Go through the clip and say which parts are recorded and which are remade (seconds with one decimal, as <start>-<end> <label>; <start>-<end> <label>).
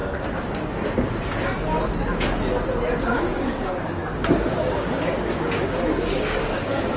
0.0-3.0 recorded; 3.0-7.0 remade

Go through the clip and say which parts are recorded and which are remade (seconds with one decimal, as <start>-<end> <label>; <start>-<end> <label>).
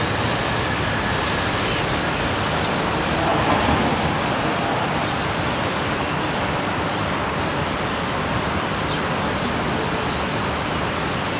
0.0-11.4 recorded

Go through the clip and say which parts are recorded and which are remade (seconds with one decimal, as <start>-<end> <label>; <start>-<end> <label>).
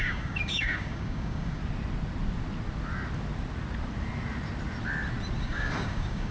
0.0-1.6 remade; 1.6-5.4 recorded; 5.4-6.3 remade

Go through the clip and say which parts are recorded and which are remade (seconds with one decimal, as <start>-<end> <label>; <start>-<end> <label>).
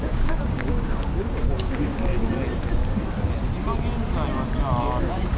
0.0-2.1 remade; 2.1-4.8 recorded; 4.8-5.4 remade